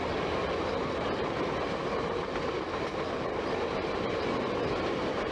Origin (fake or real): real